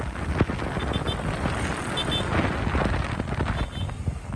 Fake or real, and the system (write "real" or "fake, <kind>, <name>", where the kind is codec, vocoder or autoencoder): real